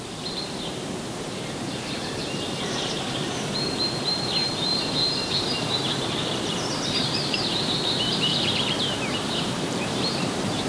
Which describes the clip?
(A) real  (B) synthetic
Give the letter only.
B